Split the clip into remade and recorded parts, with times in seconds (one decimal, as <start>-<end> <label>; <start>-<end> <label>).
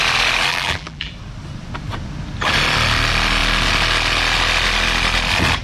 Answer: 0.0-0.5 recorded; 0.5-1.1 remade; 1.1-5.6 recorded